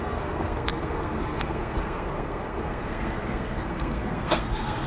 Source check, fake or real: fake